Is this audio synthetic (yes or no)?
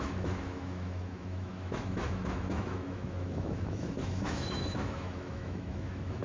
yes